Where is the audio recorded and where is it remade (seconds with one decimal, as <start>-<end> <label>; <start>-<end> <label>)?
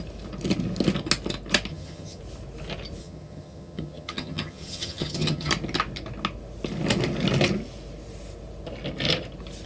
0.0-1.7 recorded; 1.7-2.2 remade; 2.2-3.0 recorded; 3.0-5.5 remade; 5.5-9.7 recorded